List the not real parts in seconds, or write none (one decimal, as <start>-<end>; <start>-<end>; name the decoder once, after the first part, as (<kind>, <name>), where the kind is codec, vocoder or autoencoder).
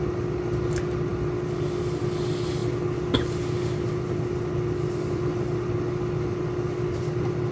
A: none